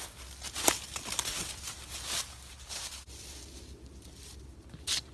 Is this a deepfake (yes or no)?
no